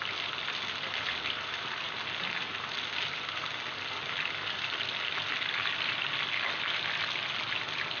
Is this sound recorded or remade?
recorded